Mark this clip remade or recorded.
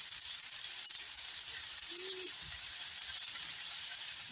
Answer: remade